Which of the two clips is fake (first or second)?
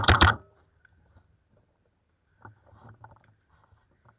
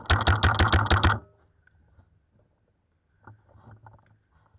first